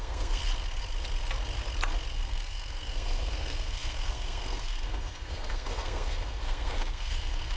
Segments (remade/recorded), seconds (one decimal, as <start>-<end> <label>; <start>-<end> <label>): 0.0-0.4 remade; 0.4-2.1 recorded; 2.1-7.6 remade